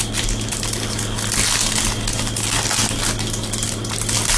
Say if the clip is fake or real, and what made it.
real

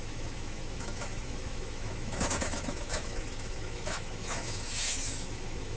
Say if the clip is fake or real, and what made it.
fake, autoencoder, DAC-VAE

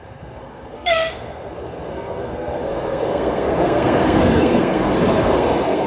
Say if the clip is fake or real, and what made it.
fake, codec, SNAC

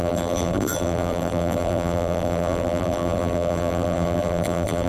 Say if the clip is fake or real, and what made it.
fake, vocoder, BigVGAN v2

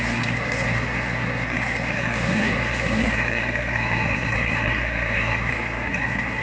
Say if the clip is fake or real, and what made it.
fake, codec, SNAC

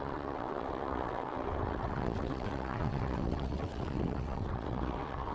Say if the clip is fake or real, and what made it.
fake, vocoder, WaveNeXt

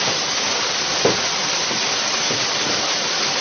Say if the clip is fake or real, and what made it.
real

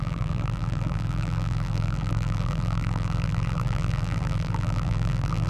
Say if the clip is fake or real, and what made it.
fake, vocoder, BigVGAN v2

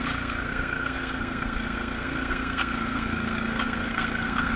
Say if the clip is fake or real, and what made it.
fake, codec, SNAC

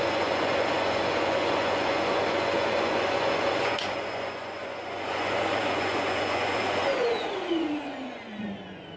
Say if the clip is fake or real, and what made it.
fake, vocoder, Vocos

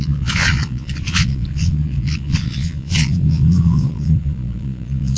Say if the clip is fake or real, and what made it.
fake, vocoder, Vocos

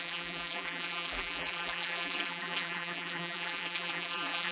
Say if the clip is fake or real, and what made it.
fake, vocoder, BigVGAN v2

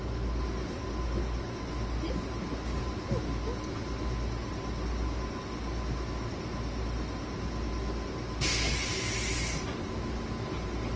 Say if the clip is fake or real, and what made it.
real